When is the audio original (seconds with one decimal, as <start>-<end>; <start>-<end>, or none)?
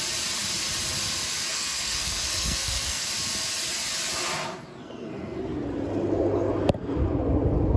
0.0-1.5; 3.1-4.8; 5.4-7.8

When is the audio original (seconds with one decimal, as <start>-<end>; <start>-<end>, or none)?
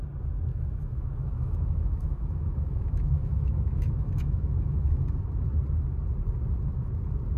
0.0-0.5; 4.9-7.4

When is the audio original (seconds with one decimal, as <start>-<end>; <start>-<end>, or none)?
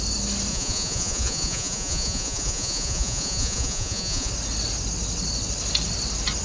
0.0-0.5; 4.3-6.4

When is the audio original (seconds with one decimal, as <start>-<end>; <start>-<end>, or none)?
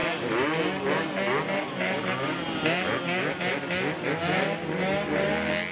0.0-5.7